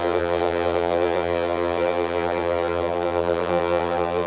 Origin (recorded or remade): remade